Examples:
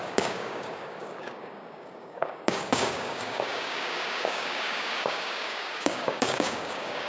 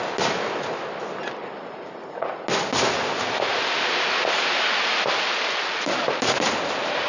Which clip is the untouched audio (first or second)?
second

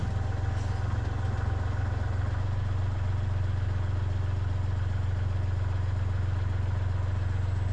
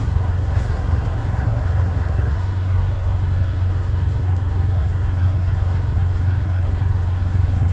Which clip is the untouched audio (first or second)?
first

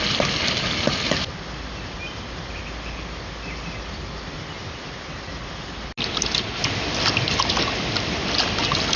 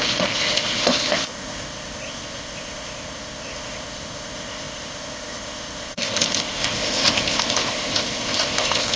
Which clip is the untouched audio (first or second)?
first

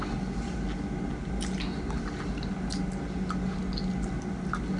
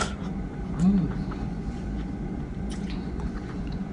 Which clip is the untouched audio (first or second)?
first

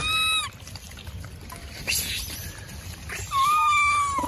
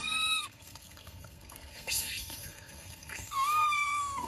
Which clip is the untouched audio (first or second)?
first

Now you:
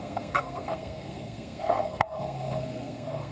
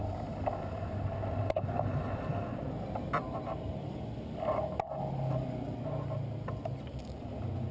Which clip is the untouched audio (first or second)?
second